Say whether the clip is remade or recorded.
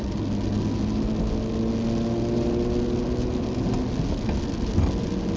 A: recorded